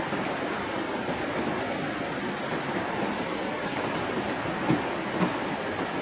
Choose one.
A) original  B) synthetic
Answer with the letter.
A